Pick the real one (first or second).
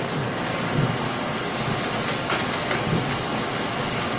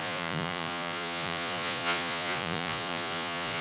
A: first